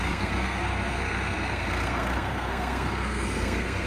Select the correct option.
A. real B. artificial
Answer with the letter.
B